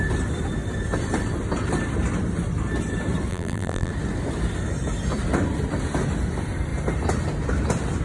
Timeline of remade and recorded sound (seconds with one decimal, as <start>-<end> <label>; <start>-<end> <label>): 0.0-3.3 recorded; 3.3-3.9 remade; 3.9-8.0 recorded